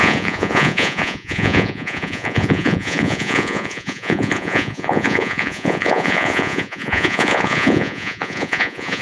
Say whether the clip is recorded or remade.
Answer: remade